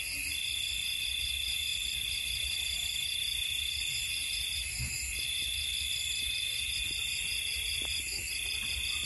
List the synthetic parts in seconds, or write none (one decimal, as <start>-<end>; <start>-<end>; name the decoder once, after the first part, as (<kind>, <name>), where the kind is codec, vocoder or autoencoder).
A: none